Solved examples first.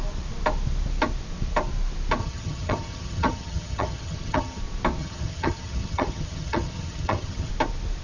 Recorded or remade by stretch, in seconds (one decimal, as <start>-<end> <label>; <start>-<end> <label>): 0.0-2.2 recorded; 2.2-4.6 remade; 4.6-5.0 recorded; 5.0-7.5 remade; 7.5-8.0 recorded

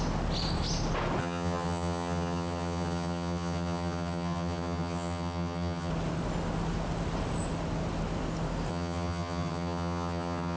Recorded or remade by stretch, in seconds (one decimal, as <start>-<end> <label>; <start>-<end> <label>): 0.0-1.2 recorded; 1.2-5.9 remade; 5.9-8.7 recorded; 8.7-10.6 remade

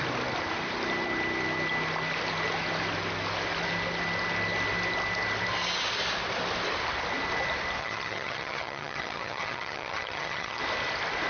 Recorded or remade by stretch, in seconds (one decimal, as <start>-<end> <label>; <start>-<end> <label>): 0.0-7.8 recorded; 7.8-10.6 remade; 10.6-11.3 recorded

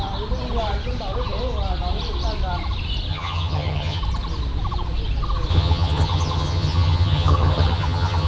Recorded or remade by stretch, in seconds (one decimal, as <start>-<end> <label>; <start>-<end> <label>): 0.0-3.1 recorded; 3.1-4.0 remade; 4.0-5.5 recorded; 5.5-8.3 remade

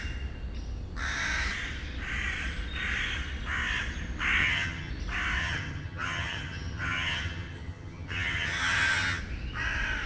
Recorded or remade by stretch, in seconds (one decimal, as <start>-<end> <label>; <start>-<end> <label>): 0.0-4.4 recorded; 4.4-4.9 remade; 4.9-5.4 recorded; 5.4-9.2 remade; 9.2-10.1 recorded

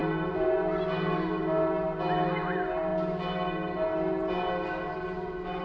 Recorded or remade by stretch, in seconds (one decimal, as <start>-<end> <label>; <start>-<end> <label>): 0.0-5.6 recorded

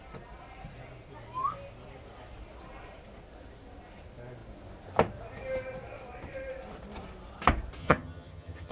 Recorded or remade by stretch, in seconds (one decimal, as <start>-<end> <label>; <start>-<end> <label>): 0.0-7.8 recorded; 7.8-8.7 remade